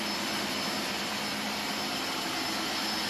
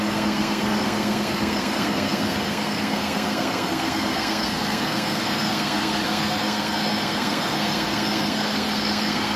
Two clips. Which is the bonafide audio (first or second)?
first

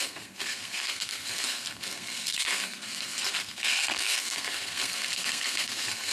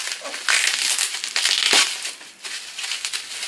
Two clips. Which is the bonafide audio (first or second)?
second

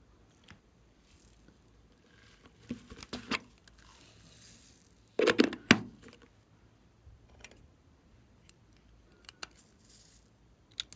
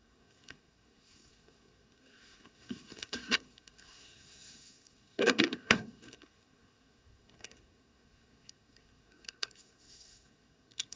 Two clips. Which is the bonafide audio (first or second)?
first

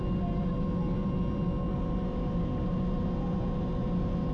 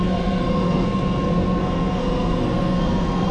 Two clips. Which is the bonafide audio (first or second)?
first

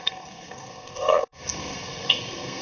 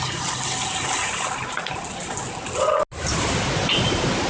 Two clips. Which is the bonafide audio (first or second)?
second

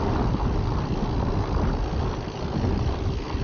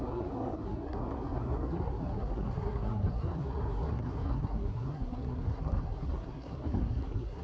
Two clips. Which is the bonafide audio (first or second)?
first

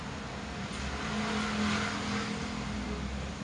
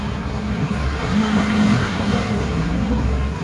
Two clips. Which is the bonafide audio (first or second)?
first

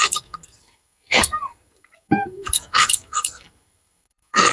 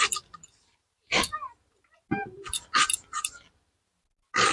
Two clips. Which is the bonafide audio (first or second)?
second